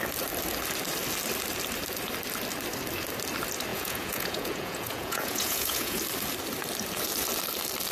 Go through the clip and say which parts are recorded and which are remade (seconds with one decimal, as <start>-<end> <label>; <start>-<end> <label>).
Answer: 0.0-3.7 recorded; 3.7-6.0 remade; 6.0-7.9 recorded